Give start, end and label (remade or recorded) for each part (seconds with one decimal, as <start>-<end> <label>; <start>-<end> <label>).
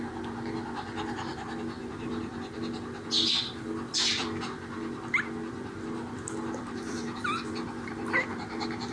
0.0-1.3 remade; 1.3-1.8 recorded; 1.8-2.2 remade; 2.2-4.2 recorded; 4.2-8.9 remade